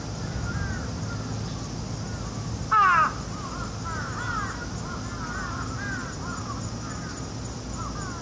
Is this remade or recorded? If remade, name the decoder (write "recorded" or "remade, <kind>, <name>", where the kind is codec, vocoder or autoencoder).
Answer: recorded